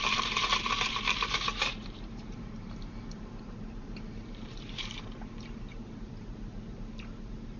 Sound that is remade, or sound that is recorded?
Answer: remade